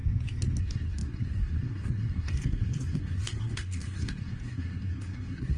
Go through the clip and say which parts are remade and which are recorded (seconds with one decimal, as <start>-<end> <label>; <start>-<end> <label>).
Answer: 0.0-0.6 recorded; 0.6-5.6 remade

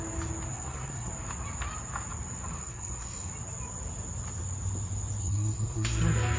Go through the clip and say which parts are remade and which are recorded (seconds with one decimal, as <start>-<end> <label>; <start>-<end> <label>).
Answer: 0.0-0.5 recorded; 0.5-1.1 remade; 1.1-2.5 recorded; 2.5-3.3 remade; 3.3-5.2 recorded; 5.2-6.0 remade; 6.0-6.4 recorded

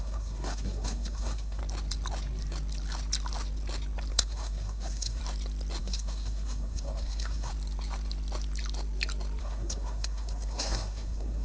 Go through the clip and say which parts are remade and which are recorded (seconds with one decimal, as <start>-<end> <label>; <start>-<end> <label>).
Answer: 0.0-1.6 remade; 1.6-4.1 recorded; 4.1-5.2 remade; 5.2-5.8 recorded; 5.8-7.5 remade; 7.5-9.4 recorded; 9.4-11.4 remade

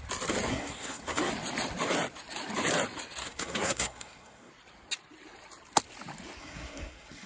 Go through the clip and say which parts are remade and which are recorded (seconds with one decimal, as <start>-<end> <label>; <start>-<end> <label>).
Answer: 0.0-0.5 recorded; 0.5-1.3 remade; 1.3-3.2 recorded; 3.2-4.5 remade; 4.5-6.4 recorded; 6.4-7.3 remade

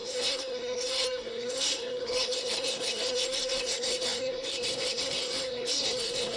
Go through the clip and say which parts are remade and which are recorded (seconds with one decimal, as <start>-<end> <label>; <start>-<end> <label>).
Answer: 0.0-6.4 remade

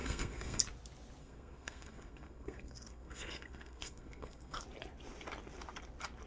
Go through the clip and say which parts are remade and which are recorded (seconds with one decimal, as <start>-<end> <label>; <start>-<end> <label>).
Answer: 0.0-0.6 remade; 0.6-1.2 recorded; 1.2-4.6 remade; 4.6-6.3 recorded

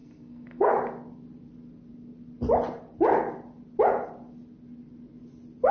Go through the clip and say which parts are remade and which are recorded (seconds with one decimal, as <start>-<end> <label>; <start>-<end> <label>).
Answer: 0.0-0.7 remade; 0.7-5.7 recorded